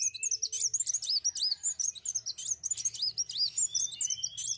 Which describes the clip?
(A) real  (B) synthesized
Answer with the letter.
A